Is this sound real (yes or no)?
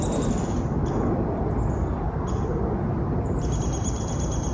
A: yes